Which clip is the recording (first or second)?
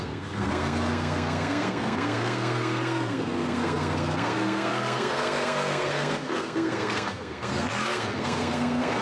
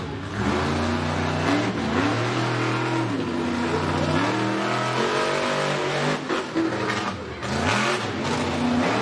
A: second